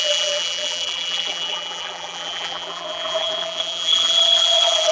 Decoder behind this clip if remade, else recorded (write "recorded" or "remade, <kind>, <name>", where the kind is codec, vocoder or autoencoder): remade, vocoder, BigVGAN v2